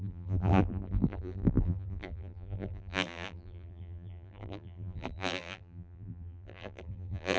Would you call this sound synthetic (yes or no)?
yes